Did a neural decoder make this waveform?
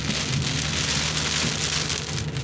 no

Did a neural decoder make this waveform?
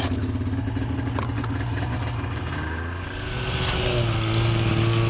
no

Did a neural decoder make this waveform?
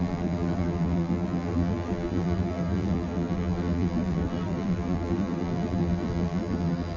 yes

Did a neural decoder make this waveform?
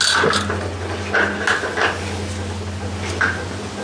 no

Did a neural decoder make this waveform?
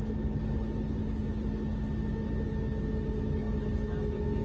no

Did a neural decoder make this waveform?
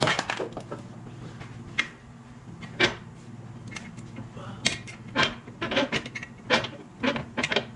no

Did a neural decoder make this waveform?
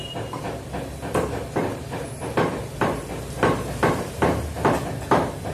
no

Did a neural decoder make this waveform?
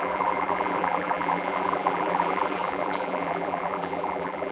yes